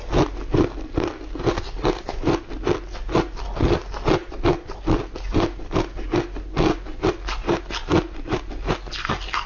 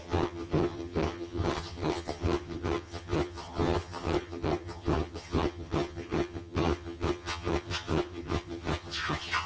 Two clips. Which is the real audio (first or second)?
first